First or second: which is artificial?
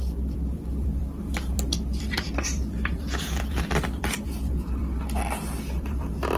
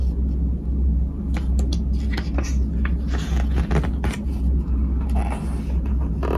first